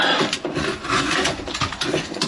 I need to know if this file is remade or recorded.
remade